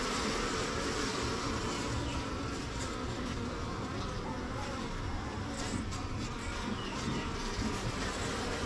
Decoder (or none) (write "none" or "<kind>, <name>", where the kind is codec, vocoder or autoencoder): none